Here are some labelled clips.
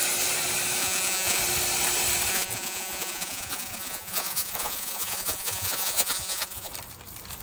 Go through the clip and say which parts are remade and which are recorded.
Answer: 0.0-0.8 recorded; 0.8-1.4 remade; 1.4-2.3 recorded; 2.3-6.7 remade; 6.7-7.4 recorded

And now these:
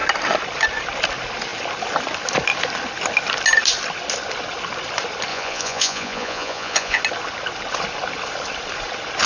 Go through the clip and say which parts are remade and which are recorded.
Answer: 0.0-5.3 recorded; 5.3-7.0 remade; 7.0-9.3 recorded

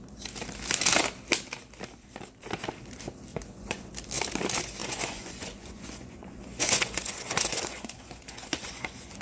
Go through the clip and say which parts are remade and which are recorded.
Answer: 0.0-3.3 recorded; 3.3-3.9 remade; 3.9-4.8 recorded; 4.8-9.2 remade

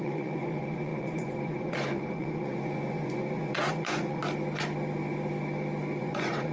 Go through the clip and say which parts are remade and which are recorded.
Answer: 0.0-4.2 remade; 4.2-6.0 recorded; 6.0-6.5 remade